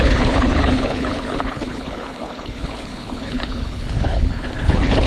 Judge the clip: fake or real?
fake